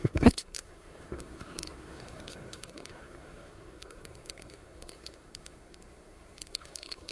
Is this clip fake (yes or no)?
yes